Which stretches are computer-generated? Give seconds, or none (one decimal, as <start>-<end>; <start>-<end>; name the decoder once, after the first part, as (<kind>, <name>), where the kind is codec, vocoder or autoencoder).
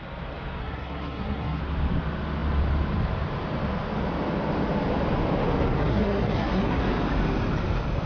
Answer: 0.6-1.6 (codec, SNAC); 5.8-6.8